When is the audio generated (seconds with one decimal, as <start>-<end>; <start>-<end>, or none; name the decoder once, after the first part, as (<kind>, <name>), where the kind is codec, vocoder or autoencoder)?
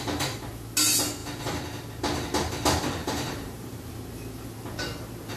3.0-3.9 (vocoder, BigVGAN v2)